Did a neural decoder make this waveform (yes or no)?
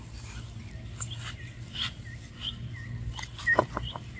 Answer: no